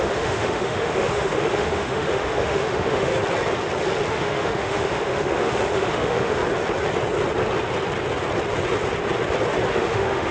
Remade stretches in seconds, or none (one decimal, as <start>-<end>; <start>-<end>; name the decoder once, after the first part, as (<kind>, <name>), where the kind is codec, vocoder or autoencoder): 0.0-3.1 (autoencoder, DAC-VAE); 4.1-6.4; 9.7-10.3